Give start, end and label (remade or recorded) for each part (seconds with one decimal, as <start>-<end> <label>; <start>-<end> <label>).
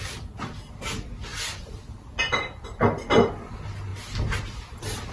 0.0-5.1 recorded